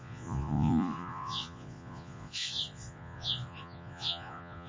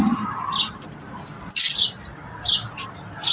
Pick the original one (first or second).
second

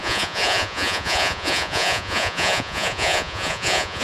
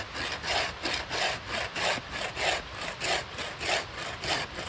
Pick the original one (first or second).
second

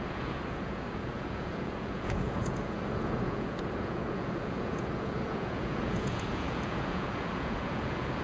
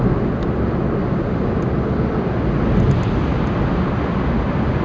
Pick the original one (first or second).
second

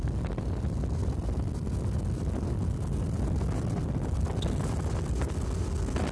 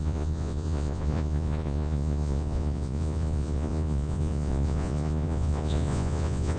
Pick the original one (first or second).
first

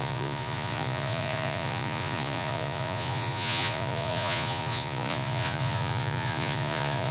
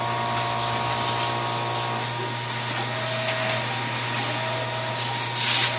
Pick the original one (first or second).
second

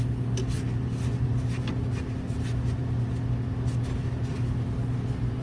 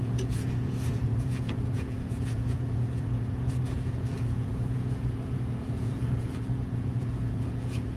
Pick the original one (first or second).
first